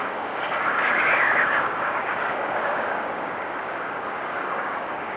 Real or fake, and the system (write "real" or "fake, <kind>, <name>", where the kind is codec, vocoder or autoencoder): fake, codec, DAC